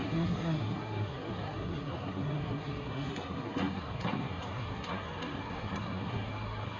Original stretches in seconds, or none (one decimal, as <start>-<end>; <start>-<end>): none